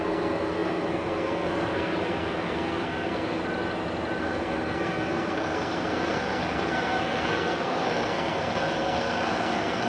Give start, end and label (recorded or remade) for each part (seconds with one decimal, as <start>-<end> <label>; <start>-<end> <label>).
0.0-3.4 remade; 3.4-4.2 recorded; 4.2-9.9 remade

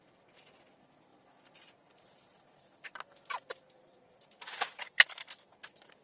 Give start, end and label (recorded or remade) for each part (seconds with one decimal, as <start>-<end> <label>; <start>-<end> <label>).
0.0-6.0 recorded

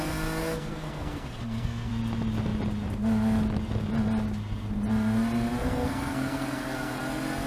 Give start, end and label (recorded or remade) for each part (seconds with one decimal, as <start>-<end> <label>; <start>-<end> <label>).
0.0-0.4 recorded; 0.4-1.9 remade; 1.9-5.6 recorded; 5.6-7.0 remade; 7.0-7.5 recorded

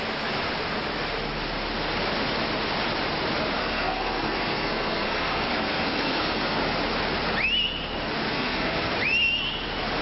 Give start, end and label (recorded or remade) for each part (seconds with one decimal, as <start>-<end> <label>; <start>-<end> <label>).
0.0-3.6 recorded; 3.6-6.6 remade; 6.6-8.3 recorded; 8.3-8.9 remade; 8.9-10.0 recorded